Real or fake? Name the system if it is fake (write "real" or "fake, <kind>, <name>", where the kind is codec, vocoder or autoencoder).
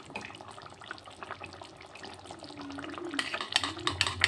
real